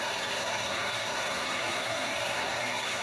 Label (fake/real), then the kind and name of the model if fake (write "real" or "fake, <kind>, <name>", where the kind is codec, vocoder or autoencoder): fake, codec, SNAC